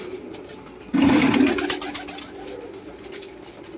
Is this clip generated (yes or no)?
no